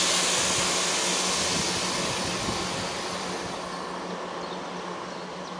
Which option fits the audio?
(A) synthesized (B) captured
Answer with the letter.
B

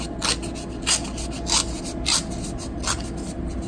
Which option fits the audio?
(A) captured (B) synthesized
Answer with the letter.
A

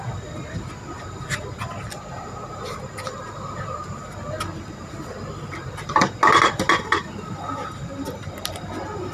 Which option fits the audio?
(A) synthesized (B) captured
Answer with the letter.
B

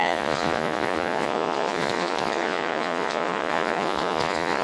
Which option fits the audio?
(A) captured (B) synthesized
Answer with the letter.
B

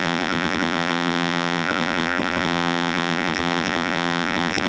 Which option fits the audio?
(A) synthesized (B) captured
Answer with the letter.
A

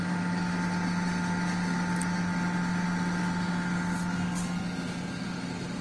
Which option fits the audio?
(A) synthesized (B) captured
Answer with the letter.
B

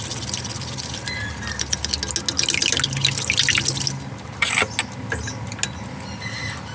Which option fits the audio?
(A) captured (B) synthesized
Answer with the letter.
A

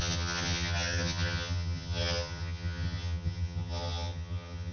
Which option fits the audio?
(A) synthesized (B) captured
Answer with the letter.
A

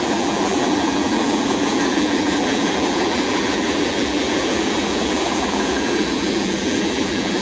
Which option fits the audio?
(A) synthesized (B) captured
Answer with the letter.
A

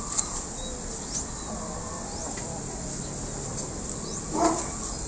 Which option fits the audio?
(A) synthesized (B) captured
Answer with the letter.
B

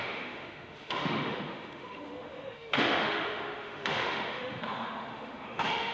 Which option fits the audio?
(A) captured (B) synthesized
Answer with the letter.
B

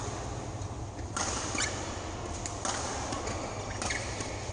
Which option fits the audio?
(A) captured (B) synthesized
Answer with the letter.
A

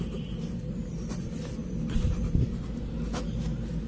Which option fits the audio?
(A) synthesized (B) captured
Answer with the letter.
B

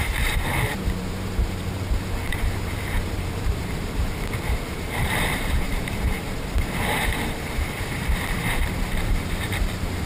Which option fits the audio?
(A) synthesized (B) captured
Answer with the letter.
A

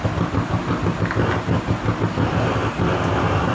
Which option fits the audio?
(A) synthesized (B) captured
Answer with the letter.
A